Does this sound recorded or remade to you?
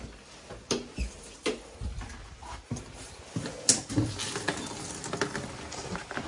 recorded